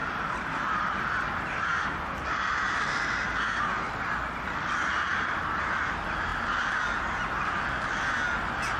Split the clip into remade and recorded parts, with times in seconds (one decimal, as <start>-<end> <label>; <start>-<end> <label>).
0.0-0.9 remade; 0.9-8.8 recorded